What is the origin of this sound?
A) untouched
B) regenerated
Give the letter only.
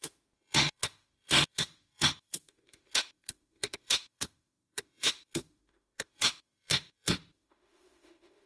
B